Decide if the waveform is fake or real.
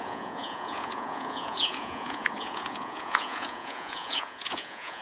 fake